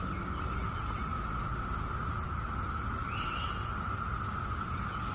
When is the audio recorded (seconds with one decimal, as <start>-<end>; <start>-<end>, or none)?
0.0-5.1